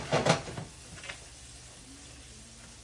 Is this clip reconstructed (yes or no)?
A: no